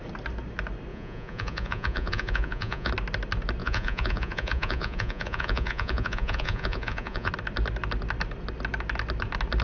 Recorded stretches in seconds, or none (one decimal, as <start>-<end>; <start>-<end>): 0.0-0.9; 2.9-3.6; 7.3-9.6